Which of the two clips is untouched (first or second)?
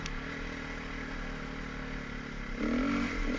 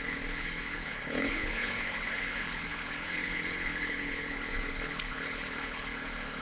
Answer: first